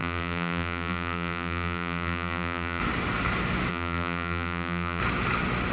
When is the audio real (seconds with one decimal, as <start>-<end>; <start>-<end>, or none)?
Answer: 2.8-3.7; 5.0-5.7